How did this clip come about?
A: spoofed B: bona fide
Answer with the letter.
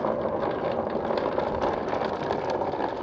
B